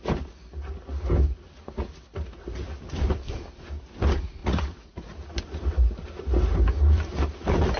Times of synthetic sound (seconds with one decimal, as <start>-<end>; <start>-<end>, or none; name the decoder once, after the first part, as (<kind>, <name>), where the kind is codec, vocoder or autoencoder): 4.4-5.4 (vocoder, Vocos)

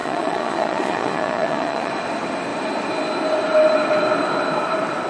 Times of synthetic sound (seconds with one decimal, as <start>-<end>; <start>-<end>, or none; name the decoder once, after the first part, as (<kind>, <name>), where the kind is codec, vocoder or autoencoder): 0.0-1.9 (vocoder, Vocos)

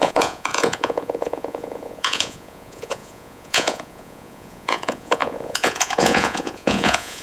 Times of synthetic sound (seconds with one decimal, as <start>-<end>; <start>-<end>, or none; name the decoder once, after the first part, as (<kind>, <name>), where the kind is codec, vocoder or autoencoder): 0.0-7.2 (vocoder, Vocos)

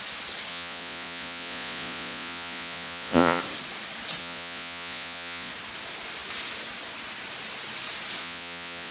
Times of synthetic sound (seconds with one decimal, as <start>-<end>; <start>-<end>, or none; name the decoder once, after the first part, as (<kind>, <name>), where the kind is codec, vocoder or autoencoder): 0.5-3.4 (vocoder, Vocos); 4.2-5.5; 8.2-8.9

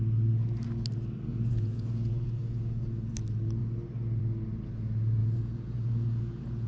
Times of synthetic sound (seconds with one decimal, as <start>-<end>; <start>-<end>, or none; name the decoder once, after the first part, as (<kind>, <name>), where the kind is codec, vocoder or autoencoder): 1.3-3.1 (vocoder, Vocos); 5.2-6.7